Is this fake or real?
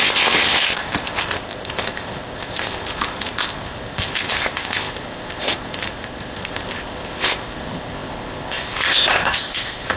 fake